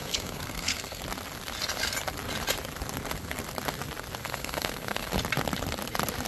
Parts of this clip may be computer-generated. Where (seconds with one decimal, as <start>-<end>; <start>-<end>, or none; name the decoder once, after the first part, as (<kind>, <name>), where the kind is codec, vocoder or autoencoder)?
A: 0.0-1.0 (codec, SNAC); 4.2-5.1